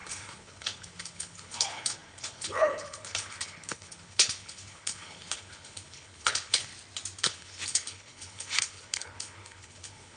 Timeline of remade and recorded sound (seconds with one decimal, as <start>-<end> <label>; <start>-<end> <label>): 0.0-6.7 remade; 6.7-7.2 recorded; 7.2-10.2 remade